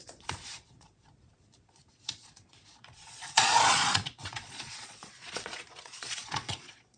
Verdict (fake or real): fake